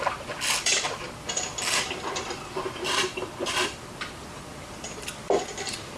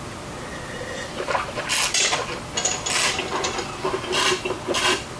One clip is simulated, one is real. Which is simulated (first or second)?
first